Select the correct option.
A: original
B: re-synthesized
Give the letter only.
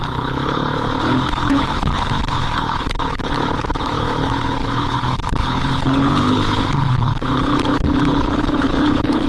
B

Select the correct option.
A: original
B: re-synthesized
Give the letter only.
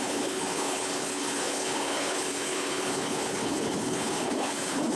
B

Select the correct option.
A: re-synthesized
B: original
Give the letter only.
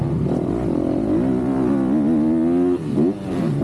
B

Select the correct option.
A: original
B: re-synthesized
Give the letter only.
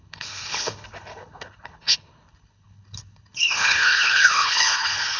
B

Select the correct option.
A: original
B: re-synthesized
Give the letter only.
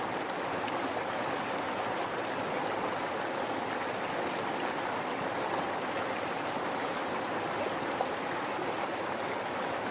A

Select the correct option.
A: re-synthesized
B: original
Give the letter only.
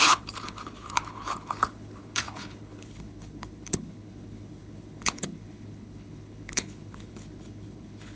A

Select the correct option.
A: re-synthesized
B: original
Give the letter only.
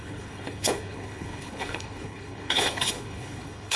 A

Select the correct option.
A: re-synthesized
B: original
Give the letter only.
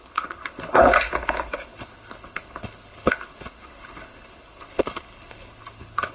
A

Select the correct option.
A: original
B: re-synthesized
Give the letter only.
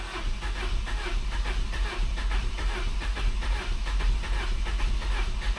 A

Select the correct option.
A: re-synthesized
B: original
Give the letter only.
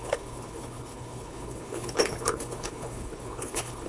A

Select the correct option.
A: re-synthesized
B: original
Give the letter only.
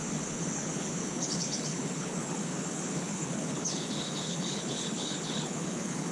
A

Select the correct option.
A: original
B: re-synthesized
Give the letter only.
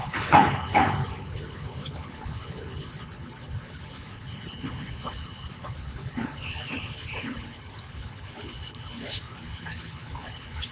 B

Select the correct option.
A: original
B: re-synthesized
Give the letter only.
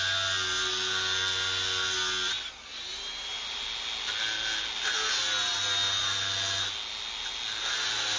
A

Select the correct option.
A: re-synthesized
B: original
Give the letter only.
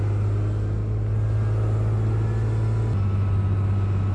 B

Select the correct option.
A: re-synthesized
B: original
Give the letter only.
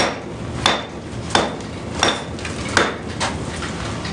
B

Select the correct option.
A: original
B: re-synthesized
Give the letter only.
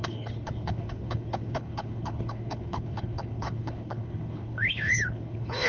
B